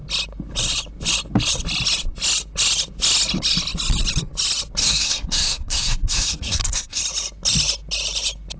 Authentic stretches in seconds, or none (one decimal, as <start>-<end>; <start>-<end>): 0.0-4.8; 7.0-8.6